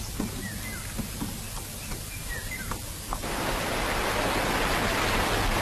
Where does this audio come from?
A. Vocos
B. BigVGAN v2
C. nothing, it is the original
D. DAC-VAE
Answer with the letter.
C